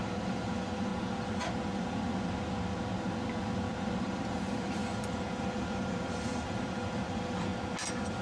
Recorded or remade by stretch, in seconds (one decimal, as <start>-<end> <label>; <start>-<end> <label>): 0.0-0.9 remade; 0.9-4.0 recorded; 4.0-4.8 remade; 4.8-5.4 recorded; 5.4-7.5 remade; 7.5-8.2 recorded